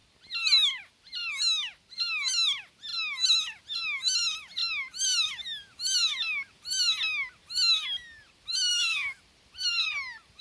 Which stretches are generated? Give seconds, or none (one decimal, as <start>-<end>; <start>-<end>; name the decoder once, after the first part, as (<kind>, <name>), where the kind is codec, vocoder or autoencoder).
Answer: 8.7-9.2 (autoencoder, DAC-VAE)

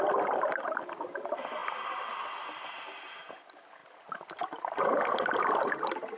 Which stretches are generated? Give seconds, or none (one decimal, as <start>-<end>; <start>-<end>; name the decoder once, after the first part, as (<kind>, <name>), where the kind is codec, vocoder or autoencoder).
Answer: none

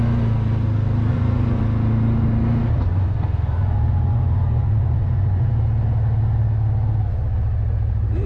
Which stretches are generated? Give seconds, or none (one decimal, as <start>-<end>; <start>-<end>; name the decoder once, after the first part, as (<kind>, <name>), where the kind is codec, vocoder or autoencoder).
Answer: 1.1-1.6 (vocoder, Vocos); 2.9-5.5

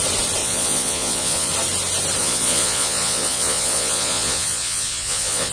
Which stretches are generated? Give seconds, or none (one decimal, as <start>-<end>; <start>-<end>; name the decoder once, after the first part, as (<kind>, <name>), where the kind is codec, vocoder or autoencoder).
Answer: 0.4-1.5 (vocoder, Vocos); 2.2-5.5

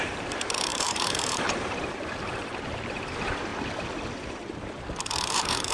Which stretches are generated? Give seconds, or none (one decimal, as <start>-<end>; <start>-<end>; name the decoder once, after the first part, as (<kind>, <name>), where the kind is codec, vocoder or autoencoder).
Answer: 0.0-3.5 (vocoder, BigVGAN v2); 5.3-5.7

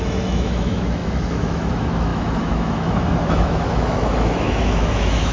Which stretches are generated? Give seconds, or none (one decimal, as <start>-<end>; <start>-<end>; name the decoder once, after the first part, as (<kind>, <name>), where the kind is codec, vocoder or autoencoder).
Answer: 0.0-5.3 (autoencoder, DAC-VAE)

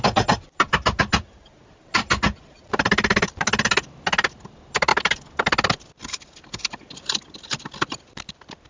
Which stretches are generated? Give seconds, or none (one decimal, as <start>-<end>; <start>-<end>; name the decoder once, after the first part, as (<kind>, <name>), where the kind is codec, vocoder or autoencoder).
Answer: none

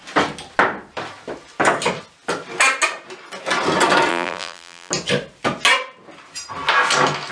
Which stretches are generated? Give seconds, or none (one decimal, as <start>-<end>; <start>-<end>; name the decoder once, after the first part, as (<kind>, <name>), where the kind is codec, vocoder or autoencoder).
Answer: 4.1-4.9 (vocoder, BigVGAN v2)